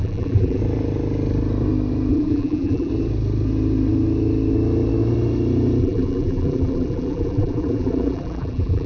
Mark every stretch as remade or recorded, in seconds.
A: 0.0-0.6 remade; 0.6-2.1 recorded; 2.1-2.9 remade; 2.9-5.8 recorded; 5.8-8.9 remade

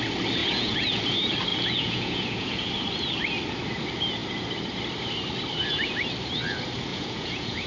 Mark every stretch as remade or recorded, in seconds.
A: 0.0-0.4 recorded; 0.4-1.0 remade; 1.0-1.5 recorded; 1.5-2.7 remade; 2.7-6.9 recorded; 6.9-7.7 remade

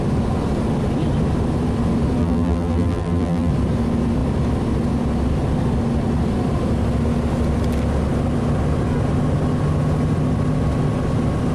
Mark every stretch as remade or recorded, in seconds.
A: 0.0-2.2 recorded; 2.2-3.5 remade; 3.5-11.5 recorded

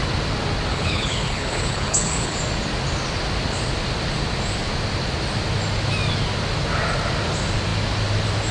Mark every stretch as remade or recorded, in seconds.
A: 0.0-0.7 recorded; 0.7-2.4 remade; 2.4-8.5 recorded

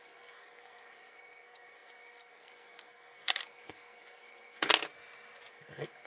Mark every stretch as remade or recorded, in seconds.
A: 0.0-4.7 remade; 4.7-5.5 recorded; 5.5-6.1 remade

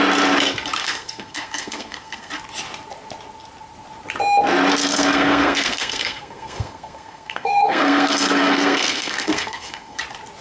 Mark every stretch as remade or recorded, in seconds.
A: 0.0-0.8 recorded; 0.8-2.3 remade; 2.3-4.8 recorded; 4.8-10.0 remade; 10.0-10.4 recorded